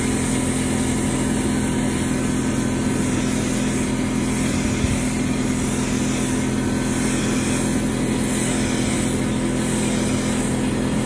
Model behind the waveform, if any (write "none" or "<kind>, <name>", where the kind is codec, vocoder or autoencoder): none